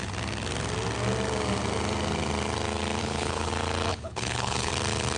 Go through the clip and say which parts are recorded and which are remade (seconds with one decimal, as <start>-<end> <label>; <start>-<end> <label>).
0.0-3.0 recorded; 3.0-3.5 remade; 3.5-3.9 recorded; 3.9-4.7 remade; 4.7-5.2 recorded